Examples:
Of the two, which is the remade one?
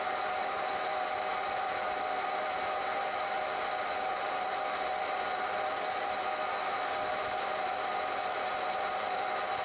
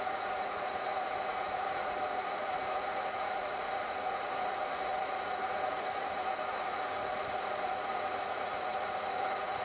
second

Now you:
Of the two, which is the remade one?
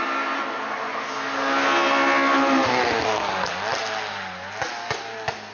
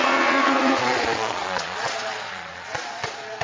second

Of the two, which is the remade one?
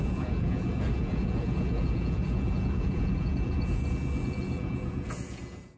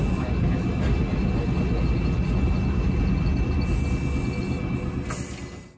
first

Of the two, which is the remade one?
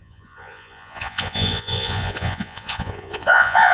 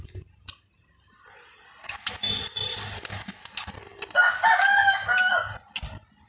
first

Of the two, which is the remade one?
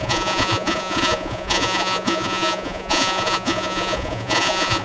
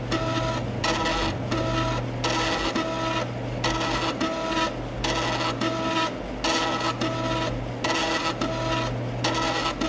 first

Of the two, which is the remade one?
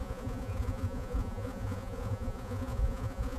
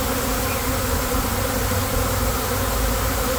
first